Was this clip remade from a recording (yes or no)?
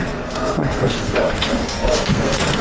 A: yes